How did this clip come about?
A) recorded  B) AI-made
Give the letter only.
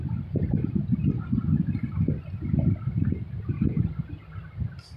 A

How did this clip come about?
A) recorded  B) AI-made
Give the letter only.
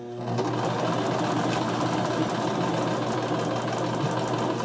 A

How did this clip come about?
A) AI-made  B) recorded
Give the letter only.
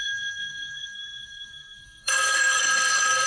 A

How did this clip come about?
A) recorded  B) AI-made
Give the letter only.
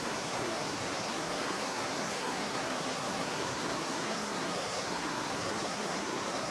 B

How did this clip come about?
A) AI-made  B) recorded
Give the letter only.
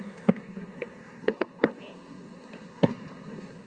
A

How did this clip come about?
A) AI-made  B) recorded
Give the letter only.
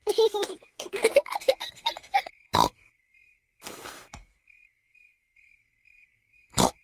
A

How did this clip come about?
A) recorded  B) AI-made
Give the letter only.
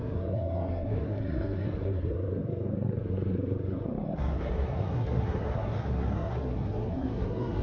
B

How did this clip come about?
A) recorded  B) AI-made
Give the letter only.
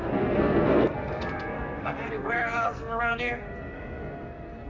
B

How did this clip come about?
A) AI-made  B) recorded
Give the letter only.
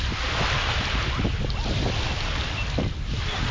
B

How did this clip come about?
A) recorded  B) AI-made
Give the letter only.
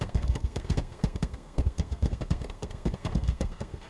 B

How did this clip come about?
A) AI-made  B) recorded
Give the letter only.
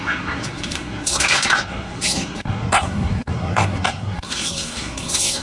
A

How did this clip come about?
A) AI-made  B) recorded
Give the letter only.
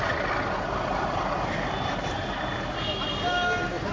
B